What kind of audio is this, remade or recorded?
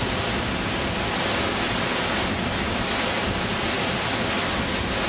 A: recorded